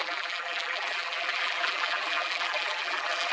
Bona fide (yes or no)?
no